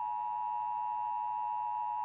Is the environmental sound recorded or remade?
recorded